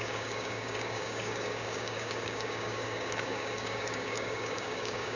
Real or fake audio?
fake